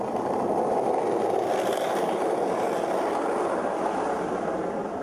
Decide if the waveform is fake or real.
fake